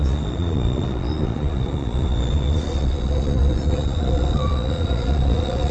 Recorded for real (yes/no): no